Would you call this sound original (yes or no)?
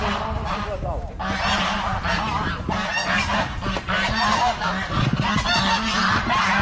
yes